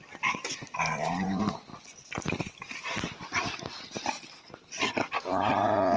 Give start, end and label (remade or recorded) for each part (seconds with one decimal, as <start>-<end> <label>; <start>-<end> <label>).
0.0-1.7 remade; 1.7-5.1 recorded; 5.1-6.0 remade